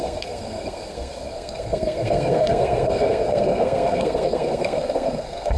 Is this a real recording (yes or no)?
no